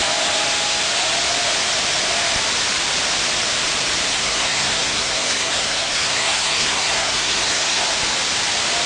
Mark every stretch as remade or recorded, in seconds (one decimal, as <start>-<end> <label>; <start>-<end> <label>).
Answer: 0.0-4.1 recorded; 4.1-7.8 remade; 7.8-8.9 recorded